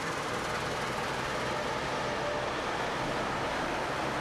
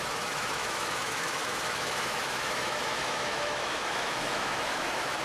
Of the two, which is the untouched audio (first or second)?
first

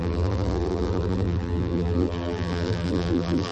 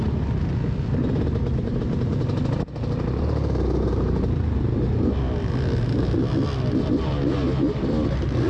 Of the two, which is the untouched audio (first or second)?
second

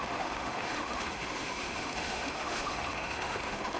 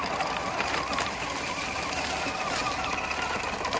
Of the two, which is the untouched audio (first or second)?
second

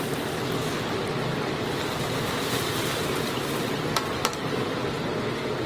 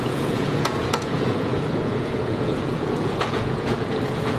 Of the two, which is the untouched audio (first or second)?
first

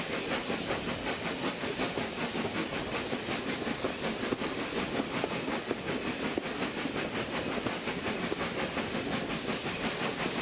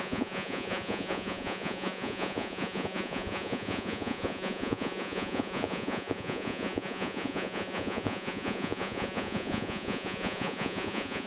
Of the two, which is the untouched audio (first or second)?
first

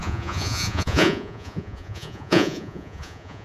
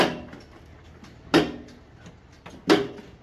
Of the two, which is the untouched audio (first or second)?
second